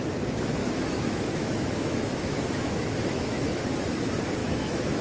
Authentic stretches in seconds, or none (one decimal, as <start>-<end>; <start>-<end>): 0.0-0.6; 3.6-4.4